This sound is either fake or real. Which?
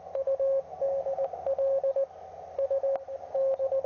real